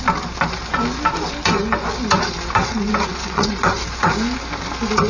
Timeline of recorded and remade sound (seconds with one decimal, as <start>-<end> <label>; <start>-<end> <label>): 0.0-2.6 recorded; 2.6-3.5 remade; 3.5-5.1 recorded